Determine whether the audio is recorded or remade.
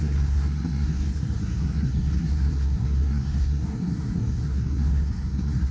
remade